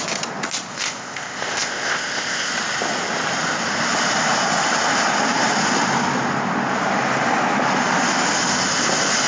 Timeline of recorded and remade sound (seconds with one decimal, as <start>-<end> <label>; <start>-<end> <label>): 0.0-0.7 recorded; 0.7-2.5 remade; 2.5-9.3 recorded